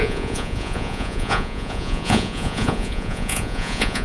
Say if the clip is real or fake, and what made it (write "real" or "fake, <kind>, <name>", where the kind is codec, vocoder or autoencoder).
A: fake, vocoder, Vocos